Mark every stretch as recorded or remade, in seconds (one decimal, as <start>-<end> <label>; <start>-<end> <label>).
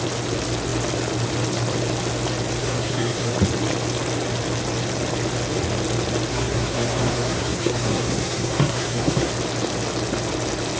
0.0-2.6 recorded; 2.6-3.3 remade; 3.3-6.3 recorded; 6.3-9.3 remade; 9.3-10.8 recorded